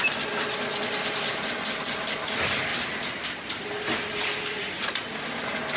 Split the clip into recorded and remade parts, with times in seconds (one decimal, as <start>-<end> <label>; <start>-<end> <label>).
0.0-5.8 recorded